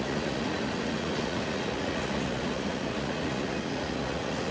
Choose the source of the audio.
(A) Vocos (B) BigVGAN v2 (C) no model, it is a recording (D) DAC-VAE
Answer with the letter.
A